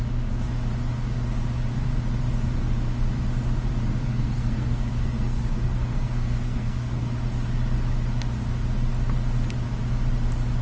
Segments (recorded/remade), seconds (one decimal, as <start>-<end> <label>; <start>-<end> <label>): 0.0-4.1 recorded; 4.1-7.1 remade; 7.1-10.6 recorded